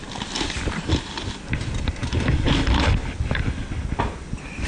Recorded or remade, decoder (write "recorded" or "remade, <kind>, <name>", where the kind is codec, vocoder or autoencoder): recorded